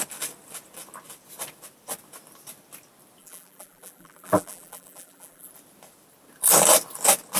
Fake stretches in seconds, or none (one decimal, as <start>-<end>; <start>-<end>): 3.2-5.5